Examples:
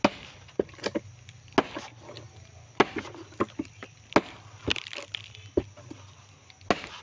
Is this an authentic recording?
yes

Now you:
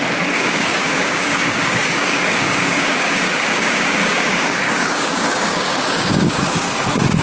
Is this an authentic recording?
no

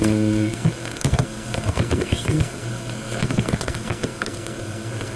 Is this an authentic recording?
no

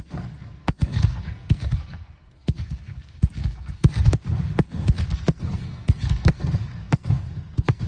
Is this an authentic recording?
no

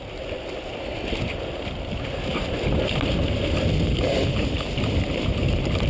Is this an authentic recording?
yes